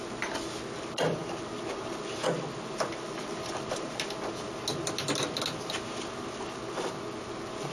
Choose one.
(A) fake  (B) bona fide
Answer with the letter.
B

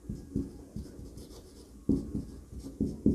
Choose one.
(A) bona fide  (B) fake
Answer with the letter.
A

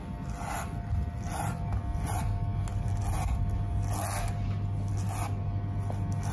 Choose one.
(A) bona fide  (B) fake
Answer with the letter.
A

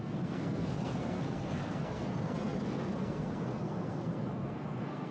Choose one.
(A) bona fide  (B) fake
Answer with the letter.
B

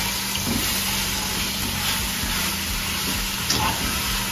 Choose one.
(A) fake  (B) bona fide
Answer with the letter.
B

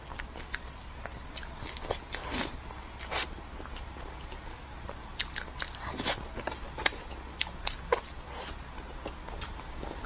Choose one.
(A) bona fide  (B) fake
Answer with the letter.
A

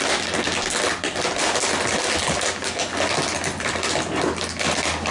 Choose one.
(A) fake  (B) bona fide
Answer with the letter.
B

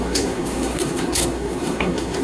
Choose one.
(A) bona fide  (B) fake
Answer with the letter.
B